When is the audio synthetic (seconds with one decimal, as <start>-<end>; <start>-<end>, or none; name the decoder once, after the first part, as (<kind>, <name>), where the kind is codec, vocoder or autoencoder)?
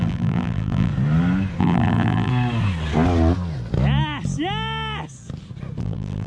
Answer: 0.0-0.9 (vocoder, BigVGAN v2); 1.6-2.3; 5.8-6.3